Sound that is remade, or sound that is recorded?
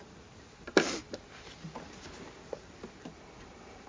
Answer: recorded